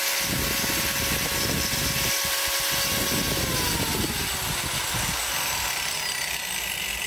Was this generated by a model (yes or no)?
no